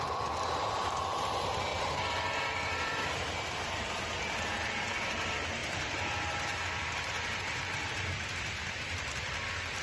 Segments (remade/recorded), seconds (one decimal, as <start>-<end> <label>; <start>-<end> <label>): 0.0-8.6 remade; 8.6-9.8 recorded